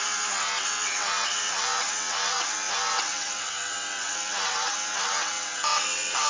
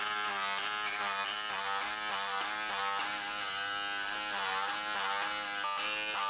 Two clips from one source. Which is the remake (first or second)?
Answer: first